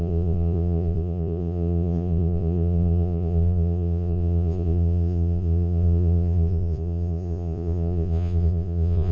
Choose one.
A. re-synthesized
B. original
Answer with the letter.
A